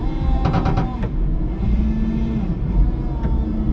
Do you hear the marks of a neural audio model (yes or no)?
no